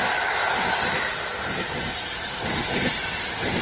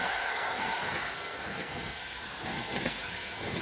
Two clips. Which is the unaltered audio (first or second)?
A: first